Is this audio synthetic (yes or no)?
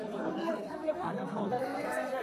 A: yes